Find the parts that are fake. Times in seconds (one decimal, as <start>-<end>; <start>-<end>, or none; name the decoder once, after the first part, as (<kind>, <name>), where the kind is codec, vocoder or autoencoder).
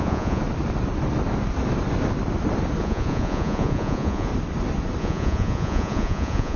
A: 0.0-0.4 (vocoder, Vocos); 2.8-4.3; 5.0-6.6